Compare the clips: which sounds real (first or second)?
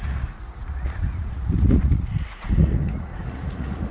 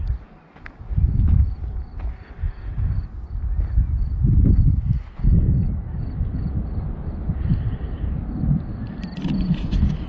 second